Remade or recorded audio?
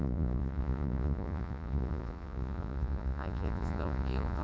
remade